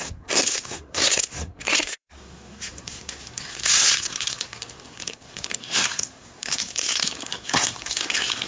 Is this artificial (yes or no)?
yes